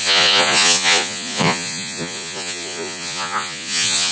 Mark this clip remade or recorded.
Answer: remade